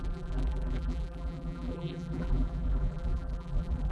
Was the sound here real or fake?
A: fake